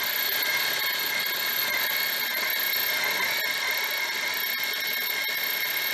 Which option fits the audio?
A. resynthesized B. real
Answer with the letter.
B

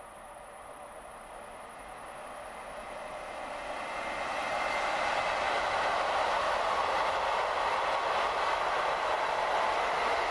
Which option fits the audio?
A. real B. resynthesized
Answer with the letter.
A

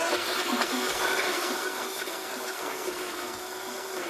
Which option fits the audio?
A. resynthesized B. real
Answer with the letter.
A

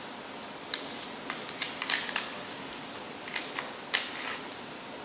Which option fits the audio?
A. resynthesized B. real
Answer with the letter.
B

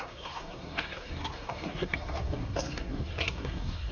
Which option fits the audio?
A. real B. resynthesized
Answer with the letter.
B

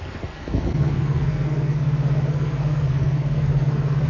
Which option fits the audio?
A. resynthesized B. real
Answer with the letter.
A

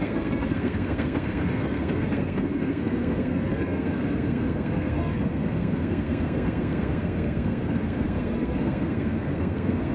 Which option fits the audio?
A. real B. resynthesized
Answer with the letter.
B